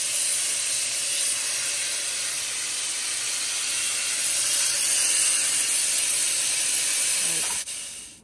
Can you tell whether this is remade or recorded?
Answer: recorded